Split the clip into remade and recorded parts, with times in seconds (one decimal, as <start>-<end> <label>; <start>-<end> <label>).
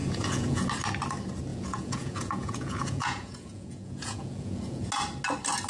0.0-0.7 remade; 0.7-1.5 recorded; 1.5-4.9 remade; 4.9-5.7 recorded